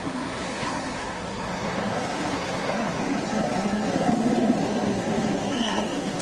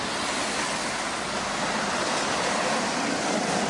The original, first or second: second